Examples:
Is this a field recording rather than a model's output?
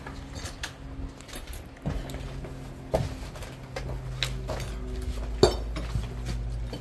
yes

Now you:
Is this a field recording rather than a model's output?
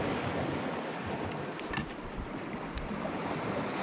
yes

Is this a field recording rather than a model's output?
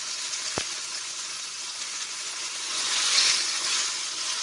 no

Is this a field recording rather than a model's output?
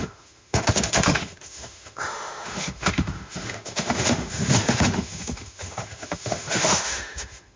no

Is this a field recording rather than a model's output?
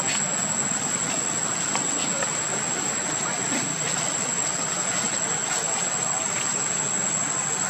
yes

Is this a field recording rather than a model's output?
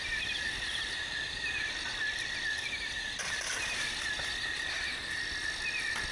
yes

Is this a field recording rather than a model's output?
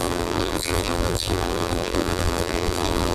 no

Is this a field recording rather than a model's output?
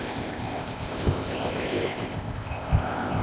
no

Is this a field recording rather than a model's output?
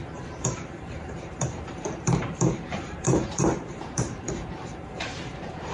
no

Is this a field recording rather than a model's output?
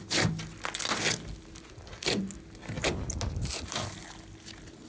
yes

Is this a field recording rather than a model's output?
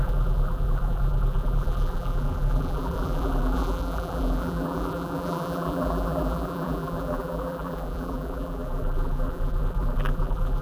no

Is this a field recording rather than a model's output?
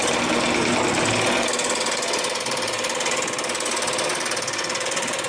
yes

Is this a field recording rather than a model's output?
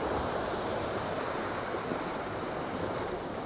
no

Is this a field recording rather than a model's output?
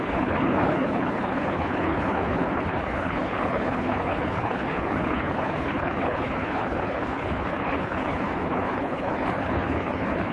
no